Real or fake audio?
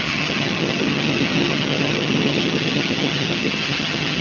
fake